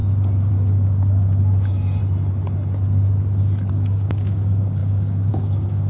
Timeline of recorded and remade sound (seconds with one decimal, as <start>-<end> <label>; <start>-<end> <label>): 0.0-0.5 recorded; 0.5-2.0 remade; 2.0-3.7 recorded; 3.7-5.9 remade